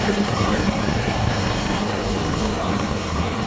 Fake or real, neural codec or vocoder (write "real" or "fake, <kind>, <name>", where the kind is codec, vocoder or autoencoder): fake, codec, SNAC